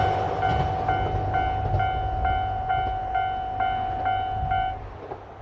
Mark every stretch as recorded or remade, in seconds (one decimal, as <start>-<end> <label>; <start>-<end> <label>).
0.0-5.4 recorded